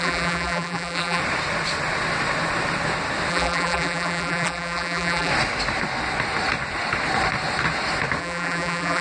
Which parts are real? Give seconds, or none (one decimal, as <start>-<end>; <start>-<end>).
1.2-3.3; 5.3-8.2